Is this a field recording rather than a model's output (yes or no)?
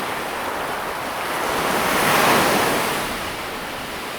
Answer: yes